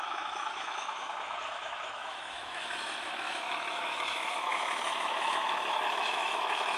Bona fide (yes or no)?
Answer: no